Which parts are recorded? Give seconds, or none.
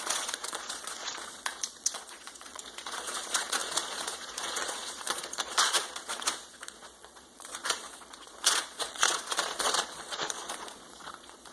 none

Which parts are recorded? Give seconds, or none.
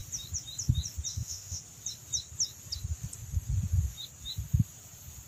0.0-1.1; 1.6-5.3